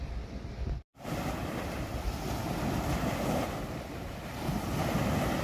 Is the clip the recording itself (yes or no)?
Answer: yes